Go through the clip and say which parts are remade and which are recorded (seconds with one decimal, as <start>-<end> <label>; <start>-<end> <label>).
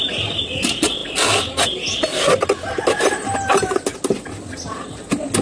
0.0-5.4 recorded